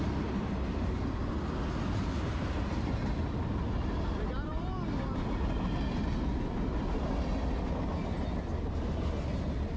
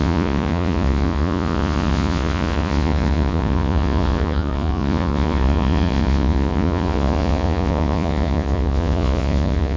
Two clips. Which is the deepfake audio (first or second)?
second